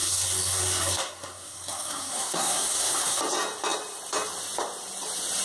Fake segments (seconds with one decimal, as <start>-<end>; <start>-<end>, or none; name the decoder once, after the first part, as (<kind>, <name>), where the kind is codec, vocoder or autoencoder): 0.0-3.2 (codec, SNAC)